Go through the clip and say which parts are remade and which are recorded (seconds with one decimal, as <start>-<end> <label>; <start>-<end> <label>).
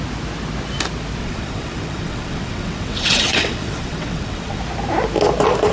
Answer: 0.0-1.2 recorded; 1.2-4.6 remade; 4.6-5.7 recorded